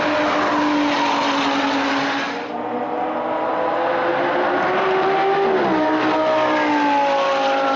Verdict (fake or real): real